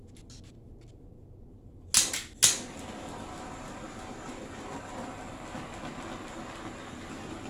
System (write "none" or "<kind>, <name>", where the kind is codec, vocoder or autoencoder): none